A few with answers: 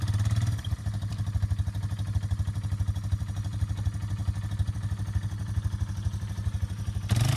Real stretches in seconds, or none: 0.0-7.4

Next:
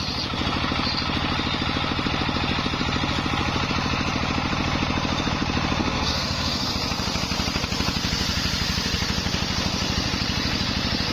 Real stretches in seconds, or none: 0.0-5.8; 6.7-11.1

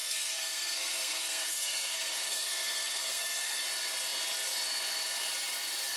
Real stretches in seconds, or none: 3.6-6.0

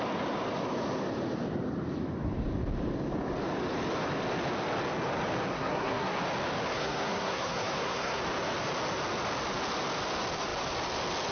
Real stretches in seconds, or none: 0.0-5.5; 6.2-6.7; 8.2-11.3

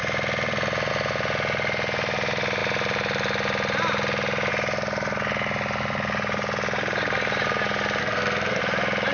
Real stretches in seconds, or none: 0.0-8.0; 8.6-9.1